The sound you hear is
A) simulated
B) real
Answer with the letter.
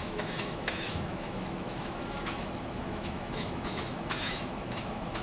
A